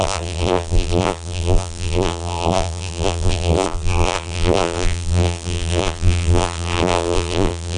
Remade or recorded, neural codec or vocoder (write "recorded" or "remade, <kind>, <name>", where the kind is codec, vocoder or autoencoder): remade, vocoder, BigVGAN v2